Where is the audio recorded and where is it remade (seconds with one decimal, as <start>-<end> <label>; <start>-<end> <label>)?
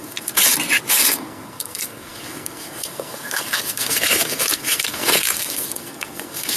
0.0-0.4 remade; 0.4-0.9 recorded; 0.9-6.6 remade